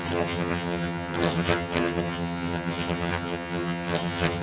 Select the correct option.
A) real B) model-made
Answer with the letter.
B